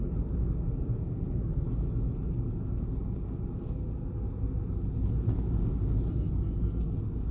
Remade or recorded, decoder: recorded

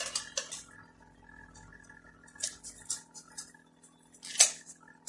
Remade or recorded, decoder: recorded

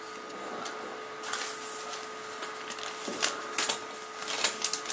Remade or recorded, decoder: recorded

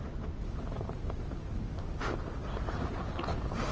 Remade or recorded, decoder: recorded